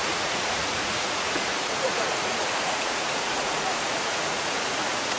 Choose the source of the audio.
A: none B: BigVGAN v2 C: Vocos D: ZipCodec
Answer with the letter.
C